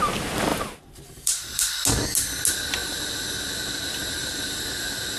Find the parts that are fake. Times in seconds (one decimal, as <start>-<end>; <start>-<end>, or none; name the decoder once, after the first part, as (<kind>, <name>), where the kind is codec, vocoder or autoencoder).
0.5-1.7 (vocoder, BigVGAN v2); 2.8-3.5; 4.0-4.6